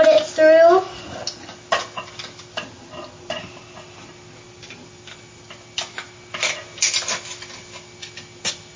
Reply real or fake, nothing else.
real